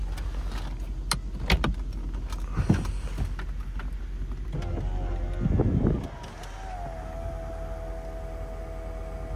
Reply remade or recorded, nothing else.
recorded